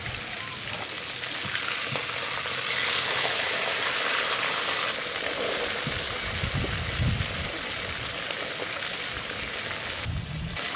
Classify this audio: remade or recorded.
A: recorded